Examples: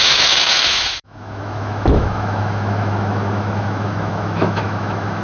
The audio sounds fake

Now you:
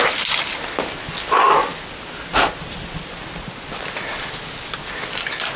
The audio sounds real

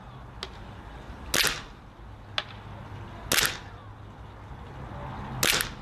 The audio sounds real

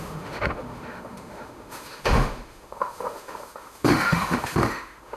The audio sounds fake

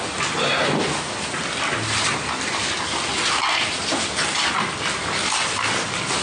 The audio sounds real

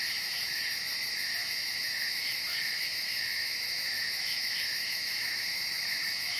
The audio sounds fake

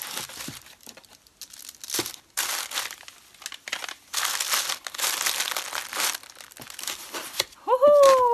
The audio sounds real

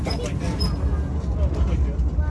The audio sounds real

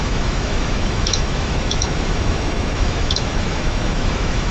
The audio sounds fake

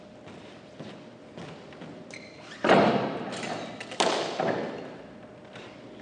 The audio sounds real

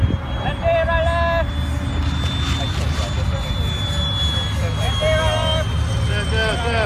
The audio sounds real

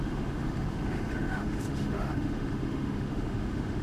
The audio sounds fake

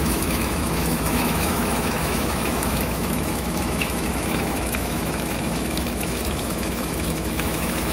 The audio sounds fake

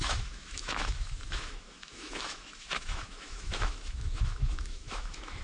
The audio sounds fake